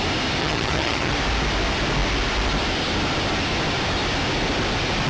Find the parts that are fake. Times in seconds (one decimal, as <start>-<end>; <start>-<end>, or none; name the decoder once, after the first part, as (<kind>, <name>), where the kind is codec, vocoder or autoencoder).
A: 0.4-1.1 (vocoder, HiFi-GAN)

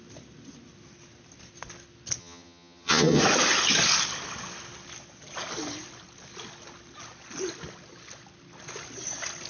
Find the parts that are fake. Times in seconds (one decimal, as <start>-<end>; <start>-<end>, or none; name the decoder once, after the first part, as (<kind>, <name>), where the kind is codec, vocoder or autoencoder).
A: 2.2-3.2 (vocoder, HiFi-GAN)